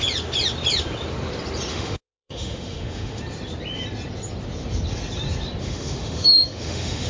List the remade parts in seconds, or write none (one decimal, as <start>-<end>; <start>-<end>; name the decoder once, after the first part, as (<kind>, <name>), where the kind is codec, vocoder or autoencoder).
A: 1.7-3.2 (autoencoder, DAC-VAE); 5.6-7.1